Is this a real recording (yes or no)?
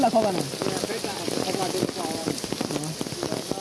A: yes